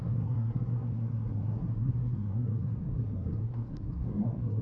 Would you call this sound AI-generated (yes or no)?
yes